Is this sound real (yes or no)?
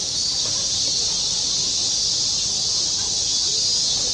yes